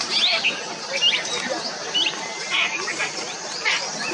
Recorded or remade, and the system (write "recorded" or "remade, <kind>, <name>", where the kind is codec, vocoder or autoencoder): recorded